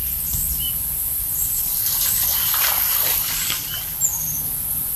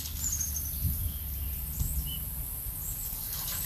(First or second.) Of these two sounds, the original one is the second